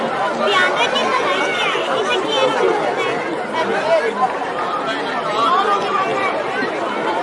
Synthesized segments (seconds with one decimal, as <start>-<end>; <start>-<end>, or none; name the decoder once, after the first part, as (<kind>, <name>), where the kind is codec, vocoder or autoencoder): none